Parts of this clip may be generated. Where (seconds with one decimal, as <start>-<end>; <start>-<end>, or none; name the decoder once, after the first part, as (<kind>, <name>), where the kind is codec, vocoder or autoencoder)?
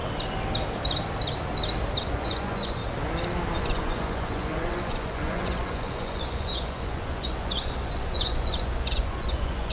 2.0-2.8 (vocoder, Vocos); 3.6-9.7